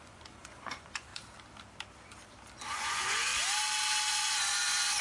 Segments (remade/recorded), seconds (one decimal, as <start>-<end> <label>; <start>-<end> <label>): 0.0-1.1 remade; 1.1-2.5 recorded; 2.5-3.3 remade; 3.3-4.1 recorded; 4.1-5.0 remade